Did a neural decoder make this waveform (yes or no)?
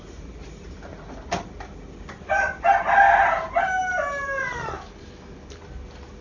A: no